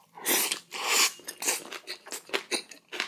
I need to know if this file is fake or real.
real